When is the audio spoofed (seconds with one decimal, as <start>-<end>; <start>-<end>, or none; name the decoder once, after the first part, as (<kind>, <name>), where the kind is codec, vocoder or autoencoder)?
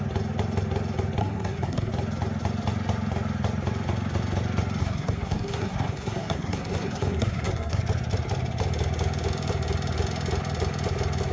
1.2-1.9 (codec, SNAC); 4.8-7.8